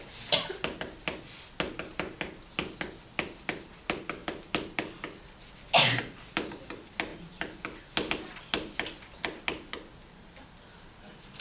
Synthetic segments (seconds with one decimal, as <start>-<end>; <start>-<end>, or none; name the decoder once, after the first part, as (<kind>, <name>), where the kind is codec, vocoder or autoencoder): none